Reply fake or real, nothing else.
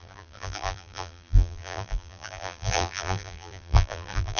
fake